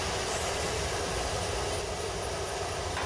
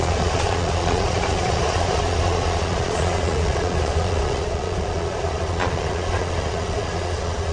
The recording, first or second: first